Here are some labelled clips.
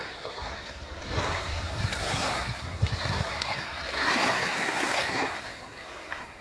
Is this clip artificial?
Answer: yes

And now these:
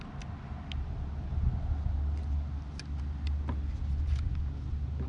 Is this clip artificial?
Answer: no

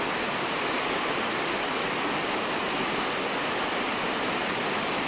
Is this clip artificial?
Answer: no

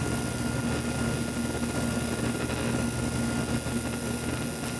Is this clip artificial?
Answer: no